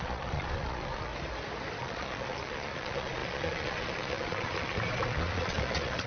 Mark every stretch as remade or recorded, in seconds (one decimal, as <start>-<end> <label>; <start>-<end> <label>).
0.0-1.1 remade; 1.1-1.8 recorded; 1.8-6.1 remade